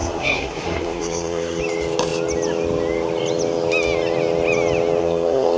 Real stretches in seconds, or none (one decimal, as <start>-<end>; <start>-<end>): 1.6-5.0